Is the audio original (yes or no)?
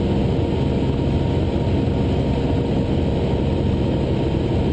yes